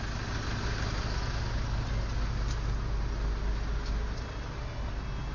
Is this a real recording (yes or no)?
yes